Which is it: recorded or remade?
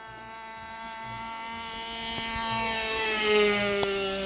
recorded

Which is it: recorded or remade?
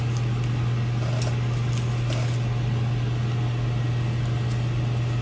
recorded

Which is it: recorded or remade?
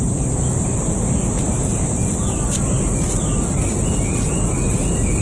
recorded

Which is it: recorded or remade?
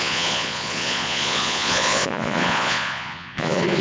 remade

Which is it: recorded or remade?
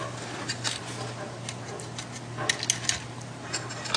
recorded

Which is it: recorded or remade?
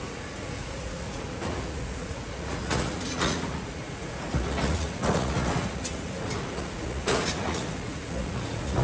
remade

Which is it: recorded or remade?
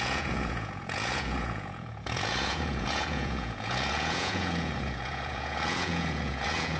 remade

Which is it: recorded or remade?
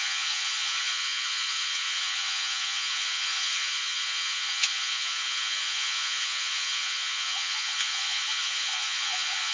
remade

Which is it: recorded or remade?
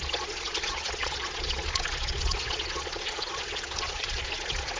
remade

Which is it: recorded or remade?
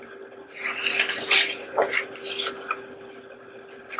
recorded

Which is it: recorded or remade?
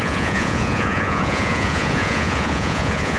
remade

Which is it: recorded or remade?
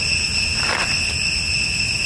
recorded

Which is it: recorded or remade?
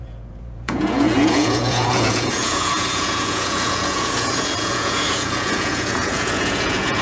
remade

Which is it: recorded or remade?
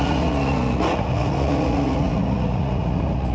remade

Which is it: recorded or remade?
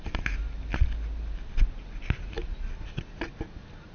recorded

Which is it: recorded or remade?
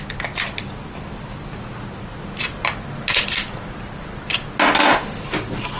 recorded